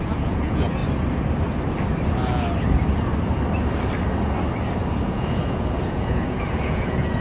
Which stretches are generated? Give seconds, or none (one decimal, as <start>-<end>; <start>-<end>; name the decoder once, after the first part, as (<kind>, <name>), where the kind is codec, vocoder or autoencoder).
0.0-0.8 (vocoder, Vocos); 5.1-7.2